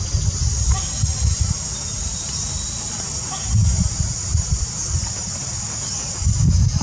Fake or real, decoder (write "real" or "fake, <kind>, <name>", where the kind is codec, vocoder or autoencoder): real